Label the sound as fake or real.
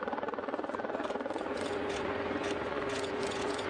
fake